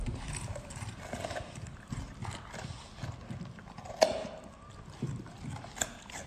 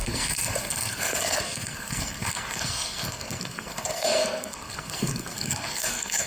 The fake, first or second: second